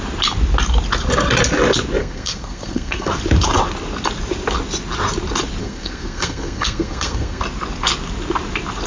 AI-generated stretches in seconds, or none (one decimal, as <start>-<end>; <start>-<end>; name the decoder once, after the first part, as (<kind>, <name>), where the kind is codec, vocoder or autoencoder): 2.0-3.1 (codec, SNAC); 5.6-7.4